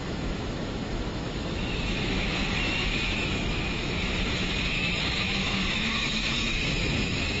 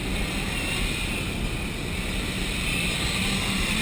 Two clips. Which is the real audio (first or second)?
second